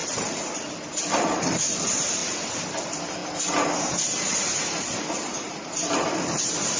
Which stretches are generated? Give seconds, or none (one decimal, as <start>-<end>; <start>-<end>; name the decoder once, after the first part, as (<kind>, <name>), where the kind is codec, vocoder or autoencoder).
0.0-2.2 (vocoder, BigVGAN v2); 2.8-3.2; 3.8-6.8